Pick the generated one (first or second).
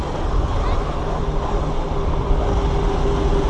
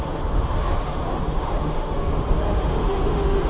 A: second